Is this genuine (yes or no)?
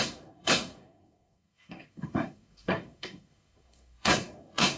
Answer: no